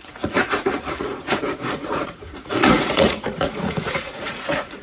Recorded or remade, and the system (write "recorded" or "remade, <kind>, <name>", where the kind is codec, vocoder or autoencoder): remade, vocoder, Vocos